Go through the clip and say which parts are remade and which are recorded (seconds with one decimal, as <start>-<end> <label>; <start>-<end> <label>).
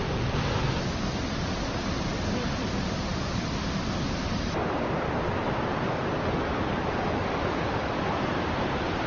0.0-9.1 recorded